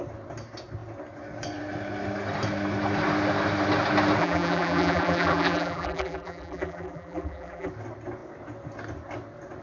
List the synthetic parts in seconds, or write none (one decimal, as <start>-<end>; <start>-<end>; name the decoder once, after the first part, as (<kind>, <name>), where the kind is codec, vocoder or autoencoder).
4.2-7.7 (vocoder, BigVGAN v2)